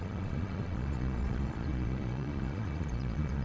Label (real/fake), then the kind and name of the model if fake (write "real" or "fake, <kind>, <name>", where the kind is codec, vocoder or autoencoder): fake, vocoder, Vocos